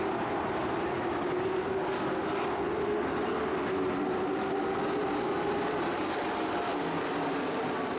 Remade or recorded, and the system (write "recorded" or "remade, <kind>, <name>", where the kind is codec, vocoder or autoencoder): remade, vocoder, BigVGAN v2